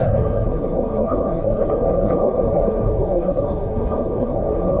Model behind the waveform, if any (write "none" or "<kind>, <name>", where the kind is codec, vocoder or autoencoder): codec, SNAC